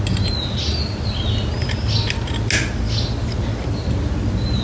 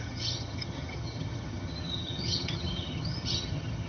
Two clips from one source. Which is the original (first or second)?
first